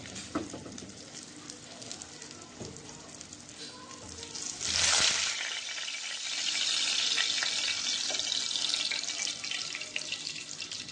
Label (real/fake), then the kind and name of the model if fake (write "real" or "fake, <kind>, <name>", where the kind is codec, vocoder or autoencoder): real